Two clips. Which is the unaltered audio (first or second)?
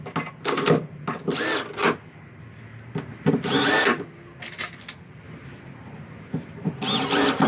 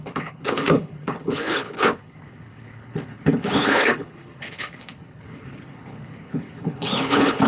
first